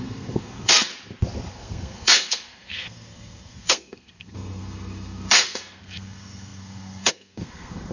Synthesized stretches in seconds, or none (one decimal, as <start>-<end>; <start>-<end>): 0.0-0.9; 1.5-7.9